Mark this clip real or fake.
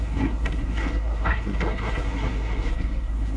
fake